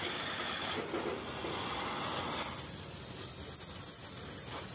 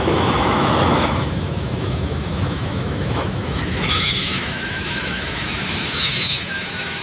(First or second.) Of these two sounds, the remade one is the second